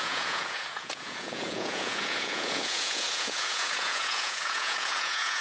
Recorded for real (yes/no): no